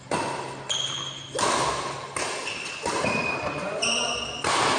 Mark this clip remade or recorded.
recorded